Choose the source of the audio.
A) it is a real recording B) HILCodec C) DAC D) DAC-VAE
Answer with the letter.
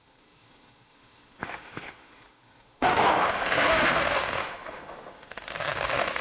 D